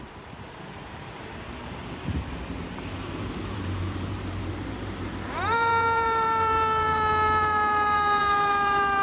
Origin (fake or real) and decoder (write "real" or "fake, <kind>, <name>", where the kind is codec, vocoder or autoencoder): fake, vocoder, BigVGAN v2